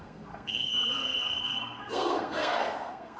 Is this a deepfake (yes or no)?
yes